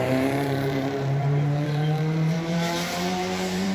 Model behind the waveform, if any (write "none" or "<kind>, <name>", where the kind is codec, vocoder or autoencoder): vocoder, BigVGAN v2